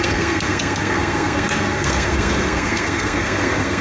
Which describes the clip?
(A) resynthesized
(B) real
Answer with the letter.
A